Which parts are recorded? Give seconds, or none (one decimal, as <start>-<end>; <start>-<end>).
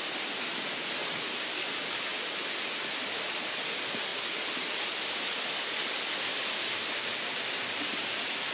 0.0-1.0; 1.7-8.5